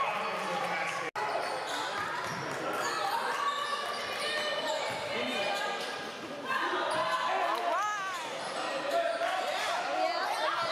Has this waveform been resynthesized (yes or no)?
no